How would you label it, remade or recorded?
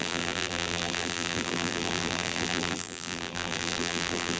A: remade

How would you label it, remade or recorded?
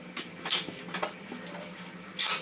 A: recorded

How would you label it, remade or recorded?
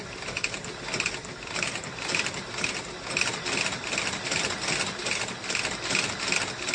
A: recorded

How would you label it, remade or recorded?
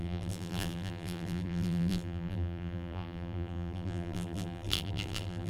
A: remade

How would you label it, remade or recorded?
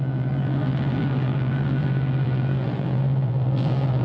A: remade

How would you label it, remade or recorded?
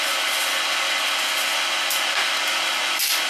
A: remade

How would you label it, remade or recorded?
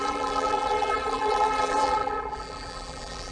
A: remade